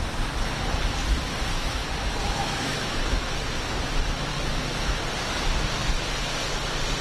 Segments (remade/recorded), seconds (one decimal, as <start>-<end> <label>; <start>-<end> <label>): 0.0-1.5 recorded; 1.5-3.3 remade; 3.3-4.3 recorded; 4.3-5.0 remade; 5.0-7.0 recorded